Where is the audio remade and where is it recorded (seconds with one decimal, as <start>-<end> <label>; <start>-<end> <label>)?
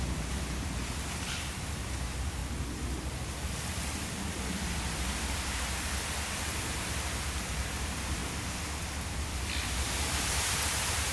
0.0-2.4 remade; 2.4-6.8 recorded; 6.8-8.2 remade; 8.2-10.0 recorded; 10.0-11.1 remade